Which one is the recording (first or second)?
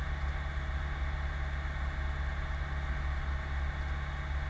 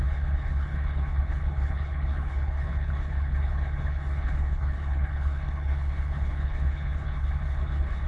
first